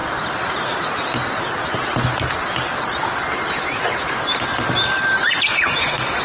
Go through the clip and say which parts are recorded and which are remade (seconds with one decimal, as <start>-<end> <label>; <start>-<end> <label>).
0.0-5.5 recorded; 5.5-6.2 remade